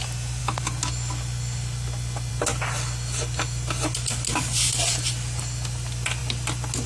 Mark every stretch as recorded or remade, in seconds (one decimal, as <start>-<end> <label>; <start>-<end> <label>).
0.0-6.9 recorded